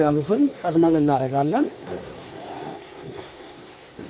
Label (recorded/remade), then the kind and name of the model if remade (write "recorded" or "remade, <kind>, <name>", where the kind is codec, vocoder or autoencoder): remade, codec, SNAC